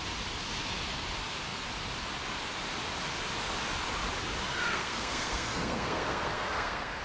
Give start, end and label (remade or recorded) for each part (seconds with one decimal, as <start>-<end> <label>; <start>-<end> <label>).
0.0-4.5 recorded; 4.5-7.0 remade

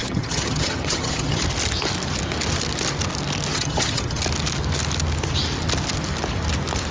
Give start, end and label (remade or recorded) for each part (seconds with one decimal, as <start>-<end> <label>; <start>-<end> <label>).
0.0-1.4 remade; 1.4-3.5 recorded; 3.5-4.2 remade; 4.2-6.9 recorded